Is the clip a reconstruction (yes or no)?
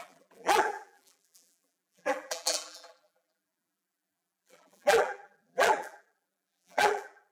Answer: yes